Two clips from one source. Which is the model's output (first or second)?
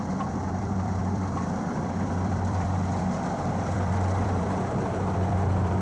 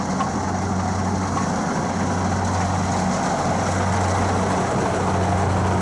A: first